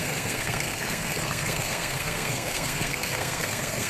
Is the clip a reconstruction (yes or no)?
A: yes